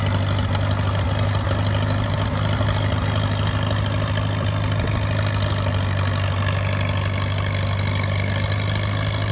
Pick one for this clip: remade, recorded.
recorded